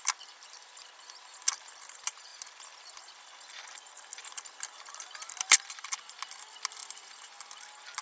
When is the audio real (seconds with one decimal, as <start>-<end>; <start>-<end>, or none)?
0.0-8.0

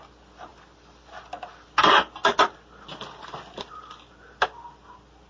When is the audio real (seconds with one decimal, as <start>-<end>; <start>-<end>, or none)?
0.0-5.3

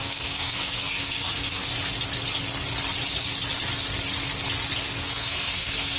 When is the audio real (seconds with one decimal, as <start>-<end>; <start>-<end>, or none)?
1.7-5.0

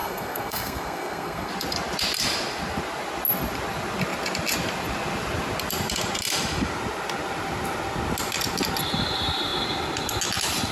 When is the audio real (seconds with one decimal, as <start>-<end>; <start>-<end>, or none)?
1.5-10.7

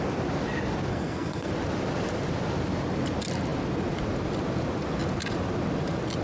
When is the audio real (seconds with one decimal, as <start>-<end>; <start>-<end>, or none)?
0.0-0.9; 1.5-6.2

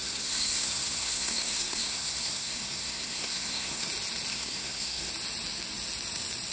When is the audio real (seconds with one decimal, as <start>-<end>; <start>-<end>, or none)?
3.9-4.3; 5.1-6.5